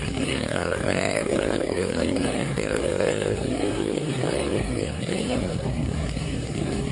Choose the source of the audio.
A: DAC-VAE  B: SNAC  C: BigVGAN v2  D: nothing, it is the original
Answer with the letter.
B